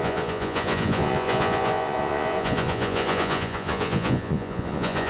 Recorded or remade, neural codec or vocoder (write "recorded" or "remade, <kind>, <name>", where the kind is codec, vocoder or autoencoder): remade, vocoder, Vocos